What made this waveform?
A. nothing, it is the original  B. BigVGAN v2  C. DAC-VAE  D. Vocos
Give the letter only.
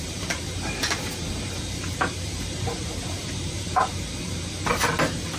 B